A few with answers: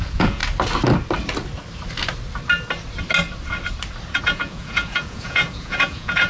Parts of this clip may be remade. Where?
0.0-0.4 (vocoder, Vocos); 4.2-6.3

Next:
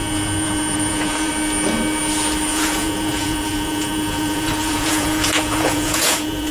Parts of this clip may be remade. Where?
0.0-1.3 (vocoder, Vocos); 2.5-6.5

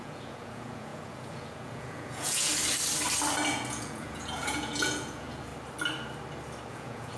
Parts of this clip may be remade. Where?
0.0-2.5 (vocoder, Vocos); 3.5-5.5; 6.7-7.2

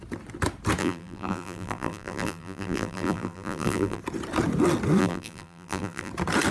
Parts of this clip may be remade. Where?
0.8-4.0 (vocoder, BigVGAN v2); 5.0-6.1

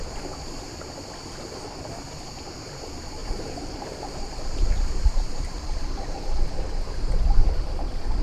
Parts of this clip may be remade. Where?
3.2-6.2 (vocoder, BigVGAN v2)

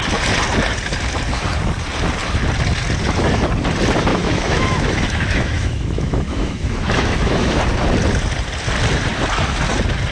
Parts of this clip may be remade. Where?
4.1-7.6 (autoencoder, DAC-VAE)

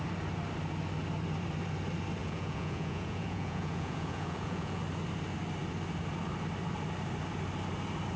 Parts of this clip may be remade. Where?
2.2-4.8 (vocoder, Vocos)